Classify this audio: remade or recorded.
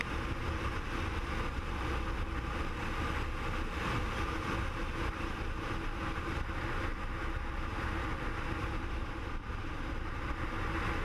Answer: recorded